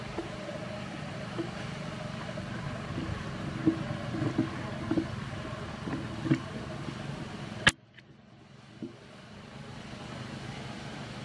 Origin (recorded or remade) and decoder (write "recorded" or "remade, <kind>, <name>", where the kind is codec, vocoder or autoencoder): recorded